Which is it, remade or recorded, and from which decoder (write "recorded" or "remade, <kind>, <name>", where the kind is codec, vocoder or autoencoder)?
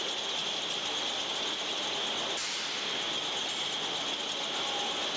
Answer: recorded